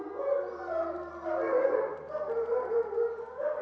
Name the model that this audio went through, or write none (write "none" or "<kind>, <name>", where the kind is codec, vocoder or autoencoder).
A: none